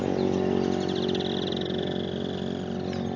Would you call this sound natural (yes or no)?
yes